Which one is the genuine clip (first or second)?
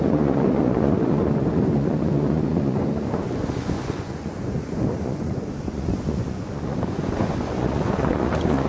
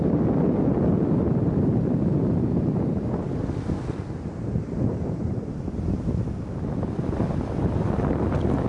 second